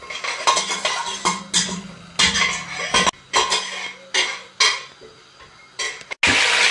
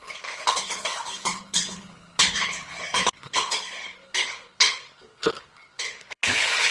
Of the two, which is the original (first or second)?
first